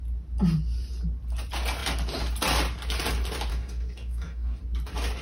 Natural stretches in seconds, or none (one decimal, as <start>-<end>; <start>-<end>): 0.0-3.5; 4.6-5.2